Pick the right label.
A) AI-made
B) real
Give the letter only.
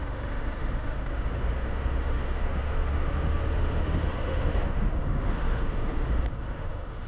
A